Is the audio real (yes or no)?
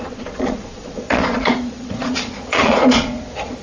no